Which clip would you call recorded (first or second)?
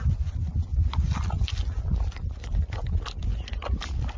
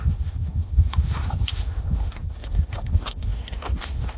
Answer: first